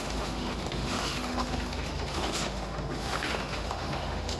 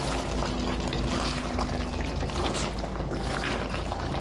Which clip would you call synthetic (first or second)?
first